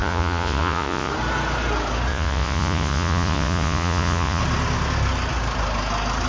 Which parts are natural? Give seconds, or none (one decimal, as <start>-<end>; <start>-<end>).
1.1-2.1; 4.4-6.3

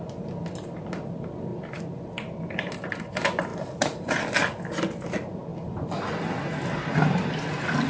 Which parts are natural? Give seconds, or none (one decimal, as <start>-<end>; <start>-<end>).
0.0-3.5; 4.2-7.9

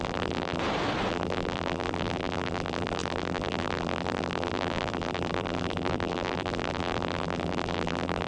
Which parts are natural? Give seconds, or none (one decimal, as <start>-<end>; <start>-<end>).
0.6-1.1

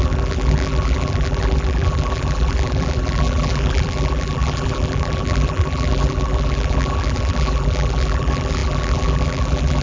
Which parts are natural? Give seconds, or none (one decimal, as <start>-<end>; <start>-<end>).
none

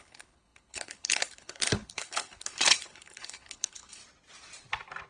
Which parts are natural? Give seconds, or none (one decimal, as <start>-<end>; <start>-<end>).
4.0-5.1

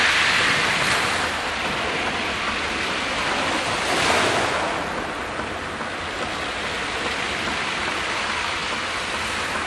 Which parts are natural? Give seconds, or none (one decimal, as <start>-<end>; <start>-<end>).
0.0-9.7